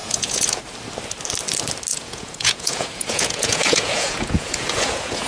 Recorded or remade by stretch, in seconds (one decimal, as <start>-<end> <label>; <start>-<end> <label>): 0.0-0.6 remade; 0.6-1.9 recorded; 1.9-5.3 remade